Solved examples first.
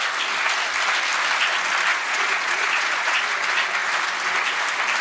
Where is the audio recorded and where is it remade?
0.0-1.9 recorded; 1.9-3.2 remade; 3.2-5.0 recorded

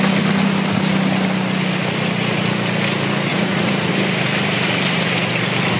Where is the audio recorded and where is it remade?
0.0-3.3 recorded; 3.3-3.9 remade; 3.9-5.8 recorded

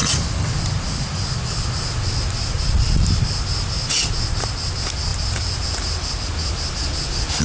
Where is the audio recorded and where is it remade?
0.0-7.4 recorded

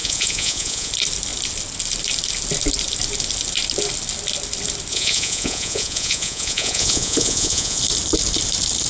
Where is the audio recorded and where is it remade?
0.0-0.9 remade; 0.9-4.9 recorded; 4.9-7.8 remade; 7.8-8.9 recorded

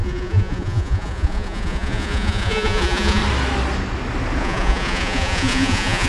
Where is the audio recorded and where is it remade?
0.0-3.2 remade; 3.2-4.4 recorded; 4.4-6.1 remade